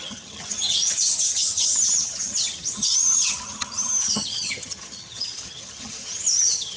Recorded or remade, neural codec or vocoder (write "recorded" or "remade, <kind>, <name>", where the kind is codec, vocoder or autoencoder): remade, vocoder, HiFi-GAN